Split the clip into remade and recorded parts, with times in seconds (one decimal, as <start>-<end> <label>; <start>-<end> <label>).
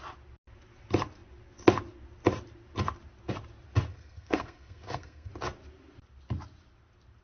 0.0-3.9 recorded; 3.9-5.3 remade; 5.3-7.2 recorded